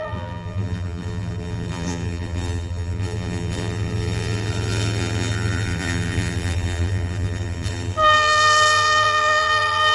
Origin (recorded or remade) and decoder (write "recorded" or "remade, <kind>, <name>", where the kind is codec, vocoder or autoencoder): remade, vocoder, BigVGAN v2